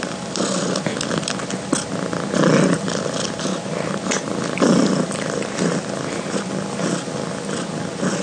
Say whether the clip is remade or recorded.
recorded